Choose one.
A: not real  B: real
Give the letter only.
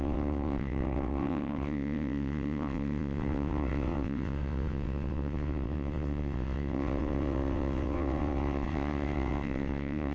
A